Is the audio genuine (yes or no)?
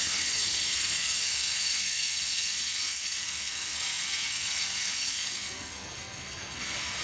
no